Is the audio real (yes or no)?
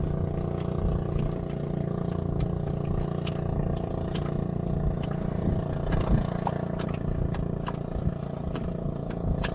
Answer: yes